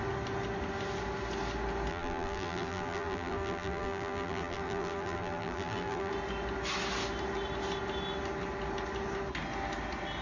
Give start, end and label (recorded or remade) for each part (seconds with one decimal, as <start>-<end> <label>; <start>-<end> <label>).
0.0-1.9 recorded; 1.9-6.1 remade; 6.1-10.2 recorded